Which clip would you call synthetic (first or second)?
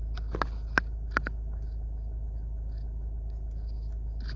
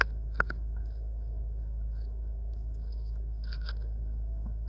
second